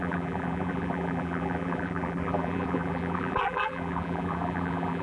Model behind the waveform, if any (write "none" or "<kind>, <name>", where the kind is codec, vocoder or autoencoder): vocoder, BigVGAN v2